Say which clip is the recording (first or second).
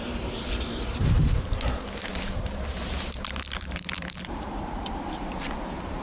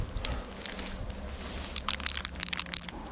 second